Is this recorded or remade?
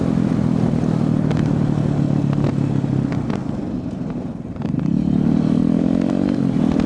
recorded